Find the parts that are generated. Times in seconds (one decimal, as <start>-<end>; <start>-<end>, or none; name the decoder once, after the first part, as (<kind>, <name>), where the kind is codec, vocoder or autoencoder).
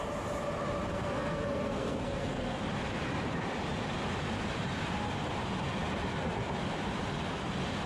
0.9-2.6 (codec, SNAC)